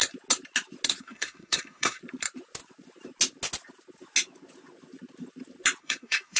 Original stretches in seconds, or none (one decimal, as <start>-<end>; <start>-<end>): 0.0-1.0; 2.0-5.8